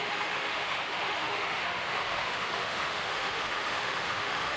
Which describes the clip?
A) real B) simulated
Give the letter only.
B